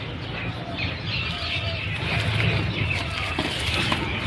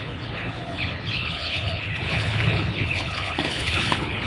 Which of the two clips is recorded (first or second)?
first